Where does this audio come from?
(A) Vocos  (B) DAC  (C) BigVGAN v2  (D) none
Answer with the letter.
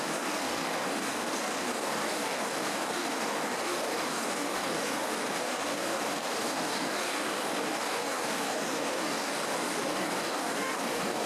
B